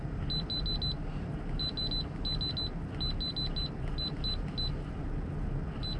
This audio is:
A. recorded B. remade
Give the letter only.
A